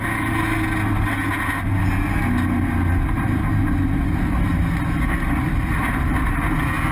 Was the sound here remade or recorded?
recorded